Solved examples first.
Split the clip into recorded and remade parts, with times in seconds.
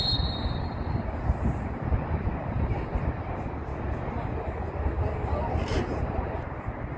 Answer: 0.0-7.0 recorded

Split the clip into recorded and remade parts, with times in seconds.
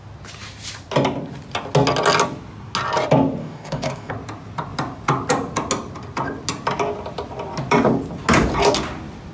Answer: 0.0-3.4 recorded; 3.4-4.1 remade; 4.1-9.3 recorded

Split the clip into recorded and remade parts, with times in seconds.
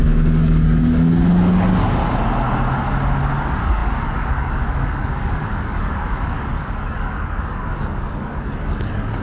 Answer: 0.0-2.0 remade; 2.0-3.4 recorded; 3.4-9.2 remade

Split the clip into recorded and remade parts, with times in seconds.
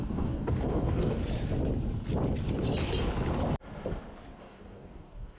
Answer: 0.0-1.2 remade; 1.2-4.4 recorded; 4.4-5.4 remade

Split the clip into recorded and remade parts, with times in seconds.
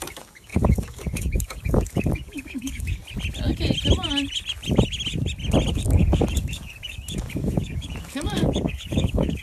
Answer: 0.0-3.0 remade; 3.0-5.7 recorded; 5.7-9.4 remade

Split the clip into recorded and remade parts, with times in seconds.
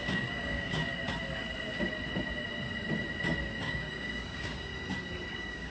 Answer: 0.0-0.8 remade; 0.8-3.6 recorded; 3.6-4.7 remade; 4.7-5.3 recorded; 5.3-5.7 remade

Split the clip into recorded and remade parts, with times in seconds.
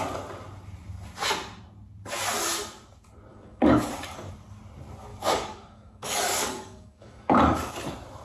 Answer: 0.0-3.3 recorded; 3.3-4.3 remade; 4.3-5.1 recorded; 5.1-7.7 remade; 7.7-8.2 recorded